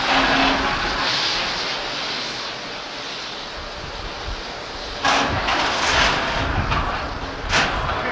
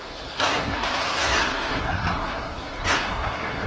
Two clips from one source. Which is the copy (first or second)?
second